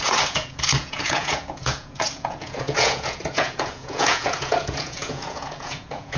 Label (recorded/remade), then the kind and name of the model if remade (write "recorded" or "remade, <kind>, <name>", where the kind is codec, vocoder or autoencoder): remade, vocoder, Vocos